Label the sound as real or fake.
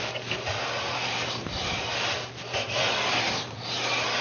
real